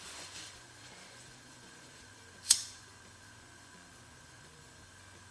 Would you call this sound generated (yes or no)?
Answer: yes